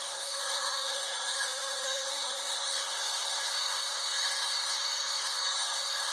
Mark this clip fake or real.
fake